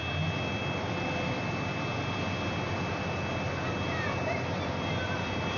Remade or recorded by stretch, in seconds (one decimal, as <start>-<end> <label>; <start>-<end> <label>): 0.0-5.6 recorded